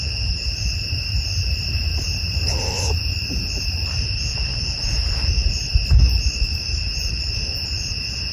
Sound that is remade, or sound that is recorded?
remade